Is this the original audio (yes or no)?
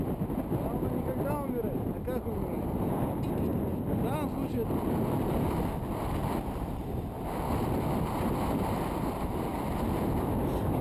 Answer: yes